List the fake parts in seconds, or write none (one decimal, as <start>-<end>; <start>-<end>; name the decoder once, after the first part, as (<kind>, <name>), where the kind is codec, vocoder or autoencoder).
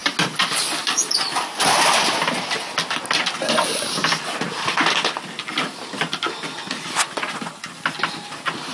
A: none